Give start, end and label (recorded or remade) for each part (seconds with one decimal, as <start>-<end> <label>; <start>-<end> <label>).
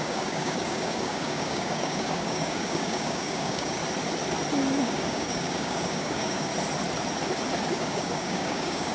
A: 0.0-3.8 remade; 3.8-4.8 recorded; 4.8-6.5 remade; 6.5-7.7 recorded; 7.7-8.9 remade